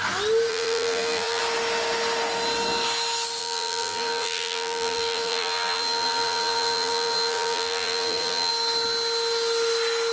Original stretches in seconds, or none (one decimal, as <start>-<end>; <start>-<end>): 0.0-0.5; 1.4-3.4; 8.5-10.1